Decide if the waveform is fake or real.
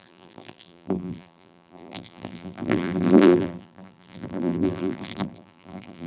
fake